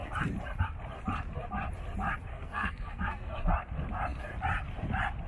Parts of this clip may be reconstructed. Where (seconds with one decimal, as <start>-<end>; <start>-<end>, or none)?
2.3-3.4